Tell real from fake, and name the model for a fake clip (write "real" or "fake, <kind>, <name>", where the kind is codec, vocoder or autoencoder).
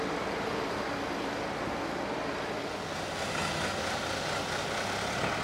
real